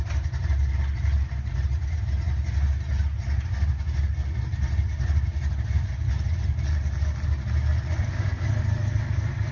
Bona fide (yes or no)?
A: yes